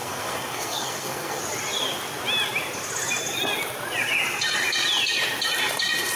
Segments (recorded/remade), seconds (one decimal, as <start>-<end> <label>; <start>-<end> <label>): 0.0-1.4 remade; 1.4-6.2 recorded